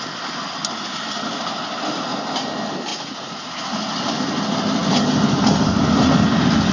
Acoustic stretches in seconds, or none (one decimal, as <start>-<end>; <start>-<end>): 0.0-2.9; 3.5-6.7